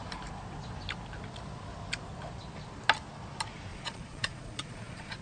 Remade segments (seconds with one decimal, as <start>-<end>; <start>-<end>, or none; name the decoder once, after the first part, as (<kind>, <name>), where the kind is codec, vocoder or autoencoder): 3.7-5.2 (vocoder, Vocos)